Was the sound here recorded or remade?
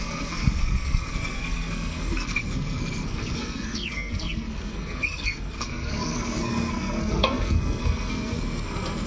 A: remade